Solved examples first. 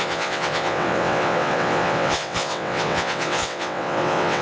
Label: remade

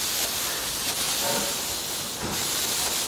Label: recorded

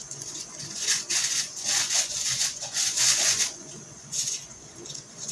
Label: remade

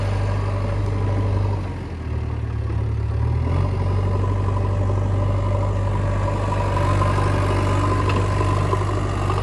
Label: recorded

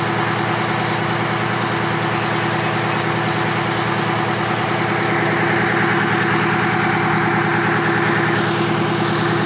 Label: recorded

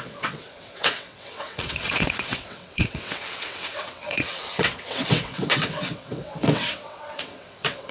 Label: remade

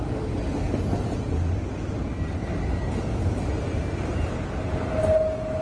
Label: recorded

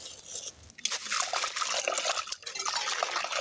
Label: recorded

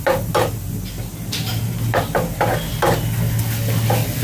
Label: recorded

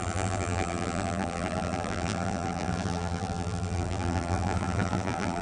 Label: remade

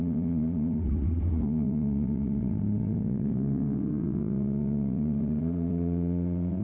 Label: remade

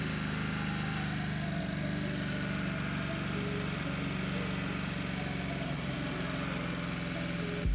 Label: recorded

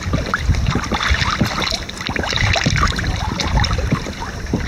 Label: remade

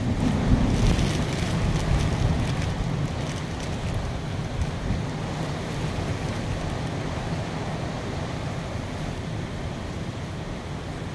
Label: recorded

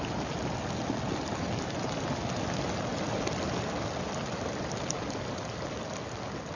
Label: recorded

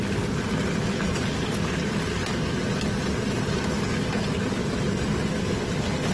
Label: recorded